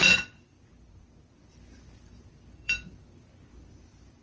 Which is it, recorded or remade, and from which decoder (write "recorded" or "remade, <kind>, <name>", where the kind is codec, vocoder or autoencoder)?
remade, vocoder, BigVGAN v2